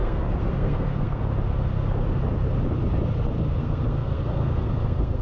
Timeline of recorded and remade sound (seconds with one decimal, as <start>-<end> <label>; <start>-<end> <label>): 0.0-1.2 remade; 1.2-3.6 recorded; 3.6-5.2 remade